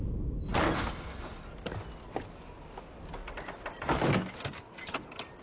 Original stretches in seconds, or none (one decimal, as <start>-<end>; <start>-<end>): 0.0-5.4